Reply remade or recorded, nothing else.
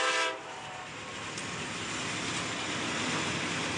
recorded